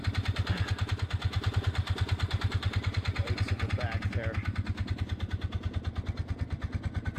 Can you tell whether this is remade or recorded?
recorded